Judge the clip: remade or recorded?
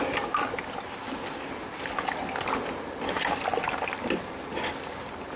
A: recorded